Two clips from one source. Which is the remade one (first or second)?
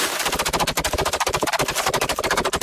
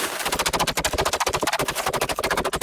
first